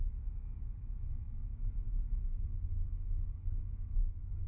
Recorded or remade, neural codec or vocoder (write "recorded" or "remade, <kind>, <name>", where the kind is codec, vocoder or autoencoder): remade, codec, DAC